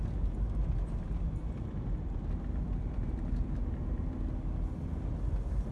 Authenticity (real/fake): real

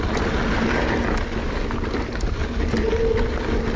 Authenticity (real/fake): real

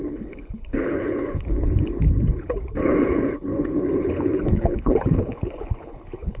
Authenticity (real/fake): fake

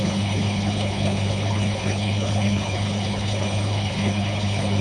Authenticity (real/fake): fake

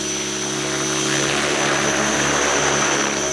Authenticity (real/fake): real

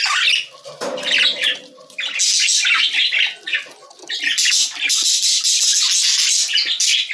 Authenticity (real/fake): real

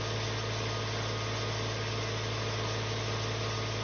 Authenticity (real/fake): real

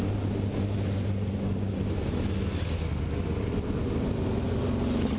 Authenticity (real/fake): real